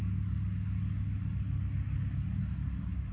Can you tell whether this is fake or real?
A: real